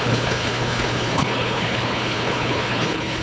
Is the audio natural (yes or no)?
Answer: no